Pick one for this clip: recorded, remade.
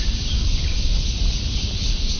recorded